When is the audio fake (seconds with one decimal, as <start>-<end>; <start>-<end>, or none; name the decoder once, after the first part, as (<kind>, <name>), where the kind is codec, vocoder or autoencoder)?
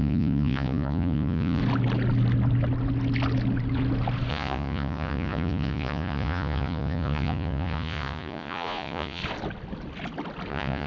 0.0-1.6 (vocoder, Vocos); 4.3-9.2; 10.5-10.9